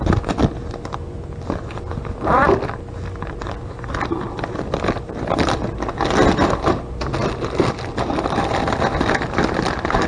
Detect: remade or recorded recorded